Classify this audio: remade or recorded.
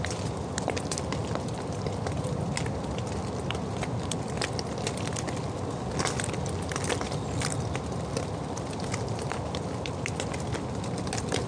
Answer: recorded